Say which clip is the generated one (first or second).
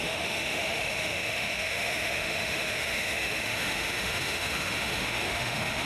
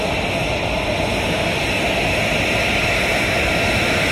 first